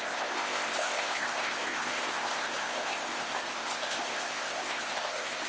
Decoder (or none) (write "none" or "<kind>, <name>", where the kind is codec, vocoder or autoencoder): codec, ZipCodec